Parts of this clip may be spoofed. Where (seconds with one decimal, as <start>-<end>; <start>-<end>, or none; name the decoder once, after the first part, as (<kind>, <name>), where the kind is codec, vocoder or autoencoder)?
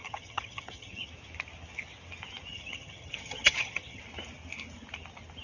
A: 0.0-1.1 (vocoder, HiFi-GAN); 2.5-4.0